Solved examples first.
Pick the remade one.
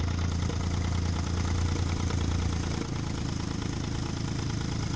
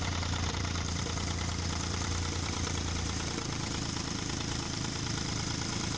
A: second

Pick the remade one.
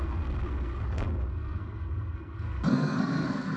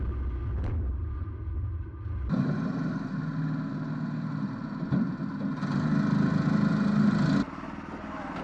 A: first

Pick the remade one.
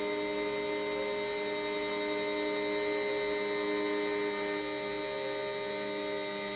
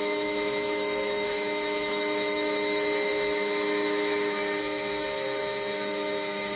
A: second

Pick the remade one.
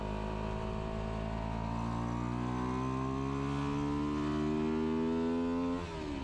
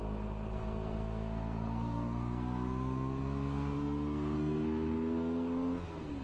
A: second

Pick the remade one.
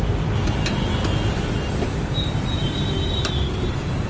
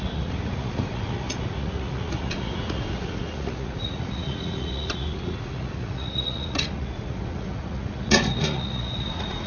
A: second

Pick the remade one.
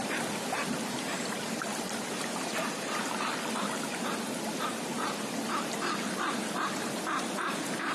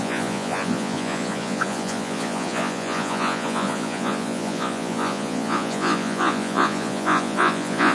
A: second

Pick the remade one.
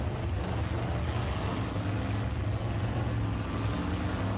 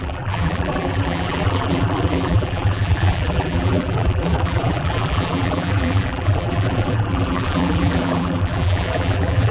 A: second